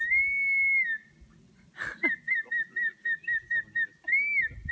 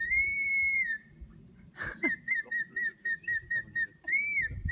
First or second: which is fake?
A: second